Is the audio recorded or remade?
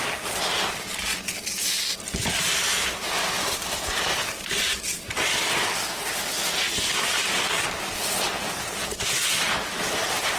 recorded